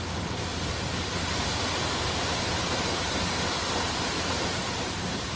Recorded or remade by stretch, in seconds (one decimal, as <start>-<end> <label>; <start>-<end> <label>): 0.0-0.5 recorded; 0.5-3.7 remade; 3.7-5.4 recorded